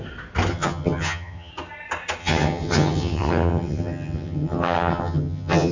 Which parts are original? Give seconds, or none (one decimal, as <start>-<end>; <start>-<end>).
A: 0.0-0.5; 1.5-2.2